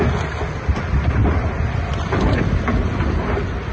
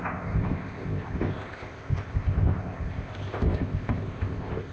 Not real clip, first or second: second